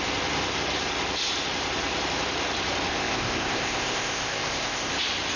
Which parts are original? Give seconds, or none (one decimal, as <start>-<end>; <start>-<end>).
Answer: 0.0-2.9; 4.9-5.4